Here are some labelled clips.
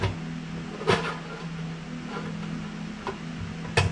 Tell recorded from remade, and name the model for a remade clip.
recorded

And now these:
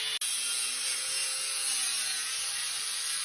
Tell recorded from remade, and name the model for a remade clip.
recorded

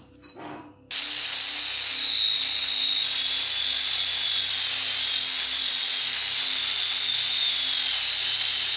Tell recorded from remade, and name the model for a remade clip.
recorded